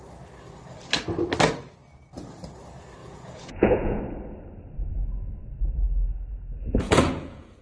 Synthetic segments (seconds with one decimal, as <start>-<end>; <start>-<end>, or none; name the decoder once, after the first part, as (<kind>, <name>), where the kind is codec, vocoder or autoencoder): 3.0-4.0 (vocoder, Vocos); 6.6-7.6